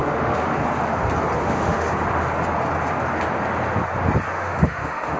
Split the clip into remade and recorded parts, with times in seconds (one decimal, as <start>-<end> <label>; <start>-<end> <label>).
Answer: 0.0-0.5 remade; 0.5-1.4 recorded; 1.4-1.9 remade; 1.9-4.3 recorded; 4.3-5.2 remade